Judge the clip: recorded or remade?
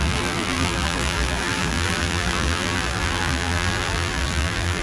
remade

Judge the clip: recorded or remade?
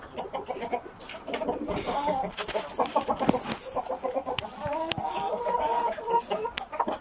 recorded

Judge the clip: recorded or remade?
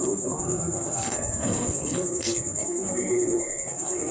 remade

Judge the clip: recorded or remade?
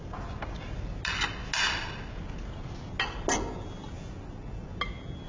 recorded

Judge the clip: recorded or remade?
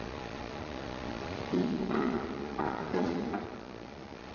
remade